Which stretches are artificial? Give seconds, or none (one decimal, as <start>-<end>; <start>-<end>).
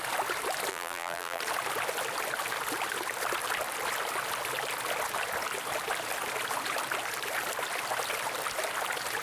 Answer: 0.7-1.4